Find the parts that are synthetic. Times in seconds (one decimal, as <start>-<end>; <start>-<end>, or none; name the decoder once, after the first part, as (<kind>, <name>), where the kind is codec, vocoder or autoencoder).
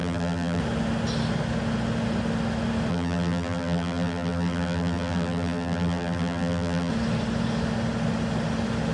0.0-0.6 (vocoder, BigVGAN v2); 2.9-6.9